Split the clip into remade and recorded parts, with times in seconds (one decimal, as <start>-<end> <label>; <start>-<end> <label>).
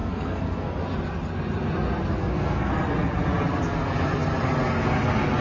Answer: 0.0-0.8 remade; 0.8-2.2 recorded; 2.2-2.7 remade; 2.7-5.4 recorded